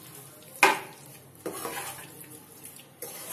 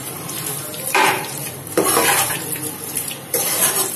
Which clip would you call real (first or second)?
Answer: first